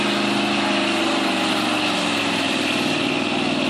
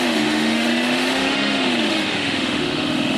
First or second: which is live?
first